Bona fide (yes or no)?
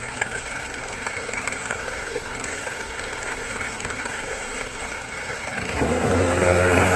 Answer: no